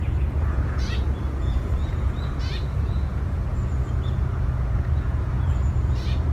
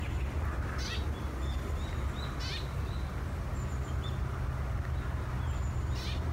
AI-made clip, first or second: first